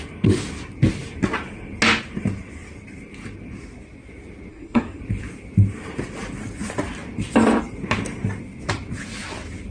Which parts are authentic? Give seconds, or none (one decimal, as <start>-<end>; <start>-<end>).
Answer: 0.0-4.5; 5.0-9.7